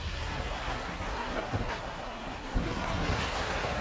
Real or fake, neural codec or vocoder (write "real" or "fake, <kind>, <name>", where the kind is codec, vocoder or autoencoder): fake, codec, SNAC